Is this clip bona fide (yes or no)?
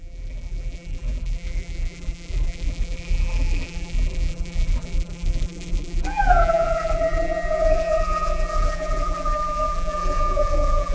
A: no